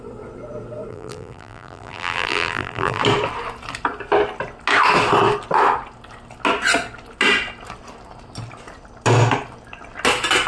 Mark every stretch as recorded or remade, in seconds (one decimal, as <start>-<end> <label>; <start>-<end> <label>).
0.0-0.9 recorded; 0.9-3.0 remade; 3.0-10.5 recorded